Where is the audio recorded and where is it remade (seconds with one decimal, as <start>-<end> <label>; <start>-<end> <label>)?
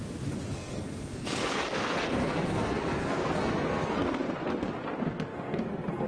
0.0-0.5 recorded; 0.5-4.2 remade; 4.2-5.3 recorded; 5.3-6.1 remade